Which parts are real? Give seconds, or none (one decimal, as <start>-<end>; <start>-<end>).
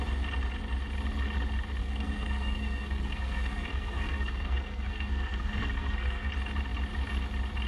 0.0-1.8; 6.3-7.7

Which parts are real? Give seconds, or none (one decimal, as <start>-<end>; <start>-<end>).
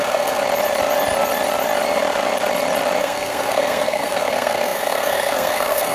0.4-3.0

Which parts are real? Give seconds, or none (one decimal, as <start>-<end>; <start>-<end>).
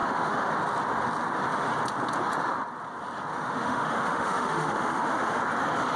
0.5-3.3; 5.4-6.0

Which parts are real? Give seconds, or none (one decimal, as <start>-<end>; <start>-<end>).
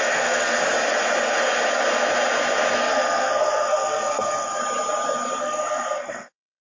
0.6-2.8; 4.6-5.4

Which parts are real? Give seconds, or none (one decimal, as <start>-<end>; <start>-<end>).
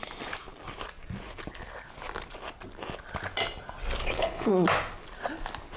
0.0-4.0; 4.5-5.8